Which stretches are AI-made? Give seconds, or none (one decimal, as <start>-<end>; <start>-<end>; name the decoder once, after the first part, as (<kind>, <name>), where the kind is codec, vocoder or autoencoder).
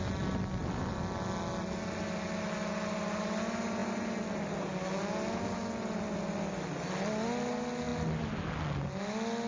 none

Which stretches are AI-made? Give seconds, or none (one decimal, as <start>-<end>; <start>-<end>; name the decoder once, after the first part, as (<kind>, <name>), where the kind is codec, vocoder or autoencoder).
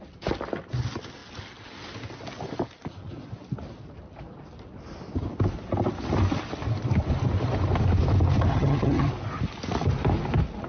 8.5-9.1 (vocoder, HiFi-GAN)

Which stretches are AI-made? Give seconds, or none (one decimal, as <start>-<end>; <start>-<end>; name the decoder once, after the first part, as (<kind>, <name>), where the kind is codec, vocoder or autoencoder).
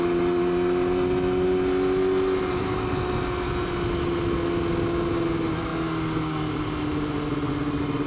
none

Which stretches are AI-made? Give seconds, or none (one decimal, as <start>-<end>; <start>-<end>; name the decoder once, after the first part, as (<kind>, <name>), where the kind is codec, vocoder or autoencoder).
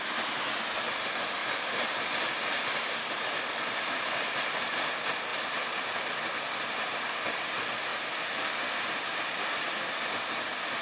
1.4-3.4 (vocoder, BigVGAN v2)